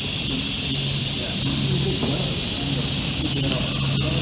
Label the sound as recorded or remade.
recorded